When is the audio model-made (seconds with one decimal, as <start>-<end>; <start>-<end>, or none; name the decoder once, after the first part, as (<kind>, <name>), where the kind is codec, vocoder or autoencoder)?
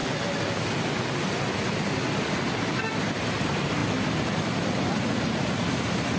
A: 3.0-3.8 (vocoder, BigVGAN v2); 5.2-6.2